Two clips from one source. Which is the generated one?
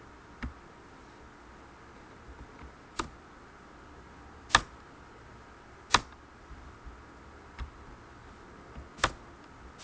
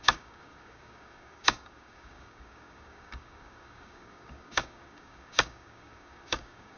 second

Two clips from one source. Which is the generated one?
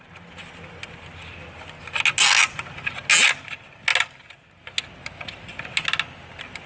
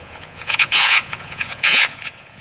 second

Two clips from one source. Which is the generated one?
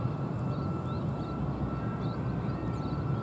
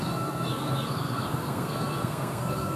second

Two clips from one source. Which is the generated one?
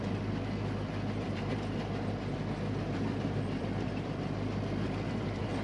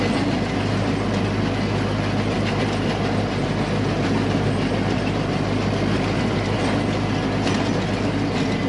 first